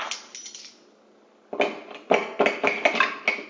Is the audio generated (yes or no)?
no